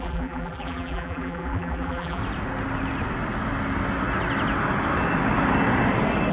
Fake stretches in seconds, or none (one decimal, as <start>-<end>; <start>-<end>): 0.0-2.2